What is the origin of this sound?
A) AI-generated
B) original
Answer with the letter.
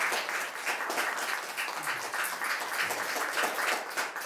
B